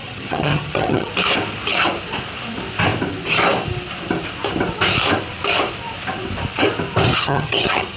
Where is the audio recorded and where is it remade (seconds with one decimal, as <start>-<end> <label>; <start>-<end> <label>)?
0.0-1.1 remade; 1.1-7.1 recorded; 7.1-8.0 remade